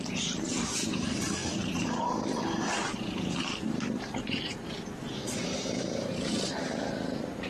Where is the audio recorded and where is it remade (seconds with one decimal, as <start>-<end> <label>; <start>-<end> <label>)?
0.0-7.5 remade